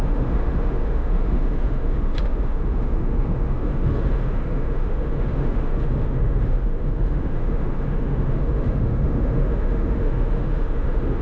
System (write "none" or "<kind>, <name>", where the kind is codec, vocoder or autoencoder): autoencoder, DAC-VAE